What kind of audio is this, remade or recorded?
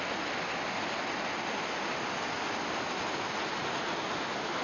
recorded